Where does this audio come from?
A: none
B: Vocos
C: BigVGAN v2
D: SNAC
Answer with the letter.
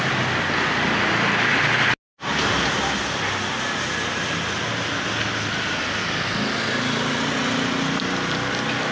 A